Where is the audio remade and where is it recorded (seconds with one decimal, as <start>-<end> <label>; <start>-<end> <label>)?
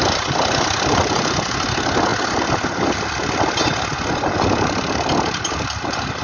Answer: 0.0-6.2 recorded